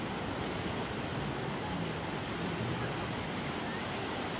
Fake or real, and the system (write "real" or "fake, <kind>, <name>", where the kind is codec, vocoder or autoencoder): real